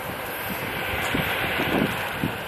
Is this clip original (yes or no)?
yes